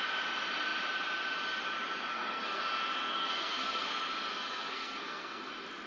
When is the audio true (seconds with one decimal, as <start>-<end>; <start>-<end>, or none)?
0.0-2.1; 2.6-3.1; 3.9-4.3; 5.5-5.9